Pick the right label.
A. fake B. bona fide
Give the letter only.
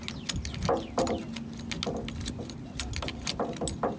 B